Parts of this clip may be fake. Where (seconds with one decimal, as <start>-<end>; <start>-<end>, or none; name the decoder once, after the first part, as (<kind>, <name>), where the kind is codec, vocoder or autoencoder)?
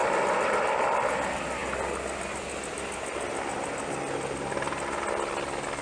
none